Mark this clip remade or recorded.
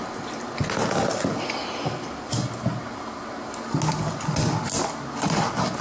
recorded